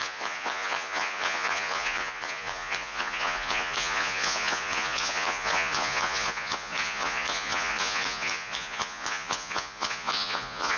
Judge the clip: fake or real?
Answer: fake